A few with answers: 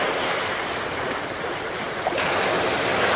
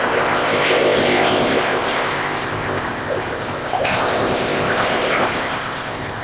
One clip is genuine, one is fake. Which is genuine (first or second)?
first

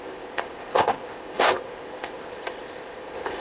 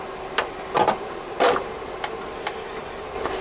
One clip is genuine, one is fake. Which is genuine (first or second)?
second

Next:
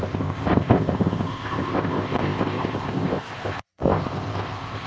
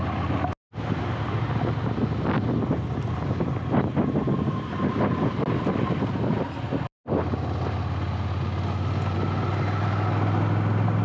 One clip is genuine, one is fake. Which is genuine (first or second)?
second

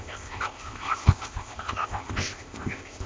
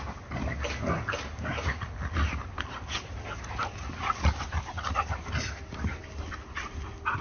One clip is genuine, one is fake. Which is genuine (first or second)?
second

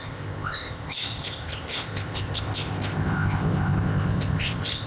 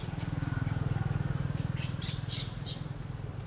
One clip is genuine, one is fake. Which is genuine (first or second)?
second